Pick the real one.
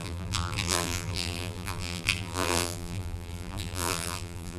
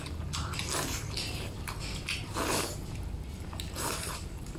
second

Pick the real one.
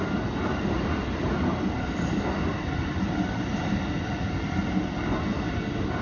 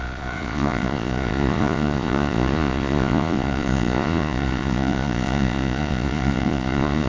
first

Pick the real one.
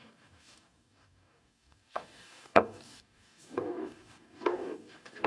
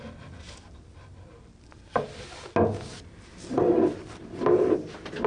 second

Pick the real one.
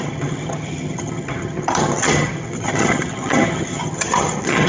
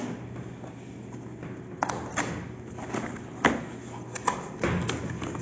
second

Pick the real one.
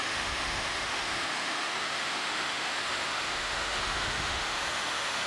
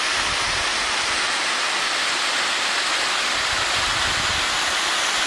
second